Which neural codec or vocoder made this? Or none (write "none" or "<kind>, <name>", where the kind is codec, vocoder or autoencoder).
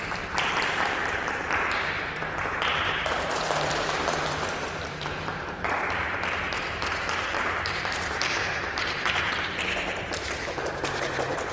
vocoder, BigVGAN v2